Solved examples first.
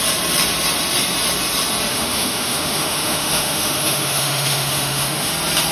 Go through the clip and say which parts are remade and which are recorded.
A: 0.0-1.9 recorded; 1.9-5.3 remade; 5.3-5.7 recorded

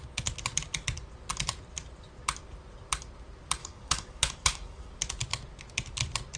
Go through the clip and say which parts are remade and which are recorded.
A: 0.0-3.6 recorded; 3.6-4.9 remade; 4.9-6.4 recorded